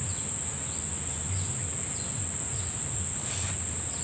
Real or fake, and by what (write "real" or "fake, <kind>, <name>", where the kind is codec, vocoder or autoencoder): real